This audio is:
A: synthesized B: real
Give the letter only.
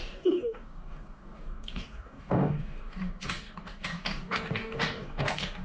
A